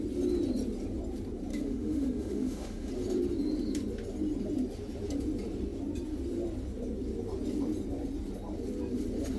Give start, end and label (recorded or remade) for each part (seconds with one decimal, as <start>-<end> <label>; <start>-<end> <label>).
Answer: 0.0-1.5 recorded; 1.5-2.9 remade; 2.9-9.4 recorded